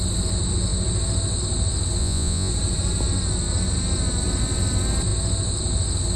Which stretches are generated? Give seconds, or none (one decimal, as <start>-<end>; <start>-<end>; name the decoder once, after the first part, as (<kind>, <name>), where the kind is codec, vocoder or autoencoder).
2.0-2.5 (vocoder, Vocos)